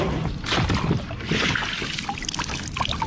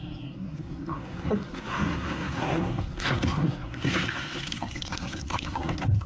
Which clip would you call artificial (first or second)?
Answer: second